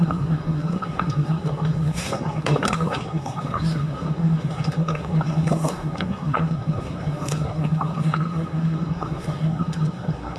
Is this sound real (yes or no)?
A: no